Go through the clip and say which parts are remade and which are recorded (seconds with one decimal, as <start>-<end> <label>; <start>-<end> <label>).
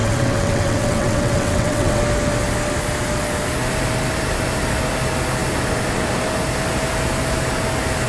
0.0-2.0 remade; 2.0-8.1 recorded